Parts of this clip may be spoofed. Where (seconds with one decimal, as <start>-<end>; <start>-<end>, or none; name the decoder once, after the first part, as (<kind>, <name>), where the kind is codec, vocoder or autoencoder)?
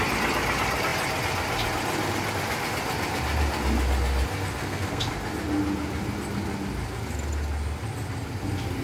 4.6-5.1 (codec, SNAC)